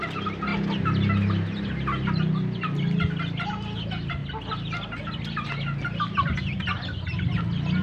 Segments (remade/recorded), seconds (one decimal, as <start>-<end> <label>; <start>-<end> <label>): 0.0-7.8 recorded